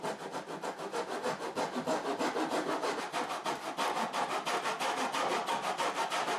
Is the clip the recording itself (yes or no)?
yes